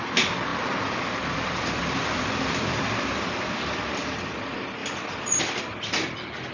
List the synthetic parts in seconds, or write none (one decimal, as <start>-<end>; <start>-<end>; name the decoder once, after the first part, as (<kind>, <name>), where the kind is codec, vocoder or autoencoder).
none